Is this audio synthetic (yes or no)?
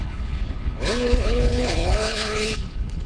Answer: yes